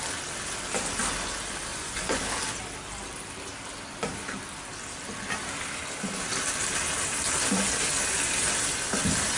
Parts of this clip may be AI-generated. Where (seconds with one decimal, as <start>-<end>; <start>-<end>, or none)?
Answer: 1.7-2.2